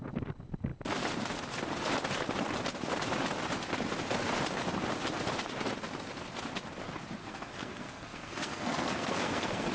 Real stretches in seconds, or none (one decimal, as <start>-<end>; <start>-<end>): 0.0-7.2